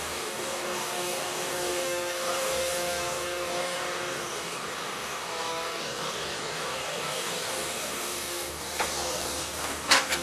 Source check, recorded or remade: remade